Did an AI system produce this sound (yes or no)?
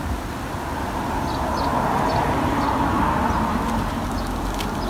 no